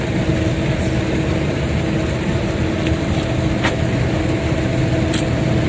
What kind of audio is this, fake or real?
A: real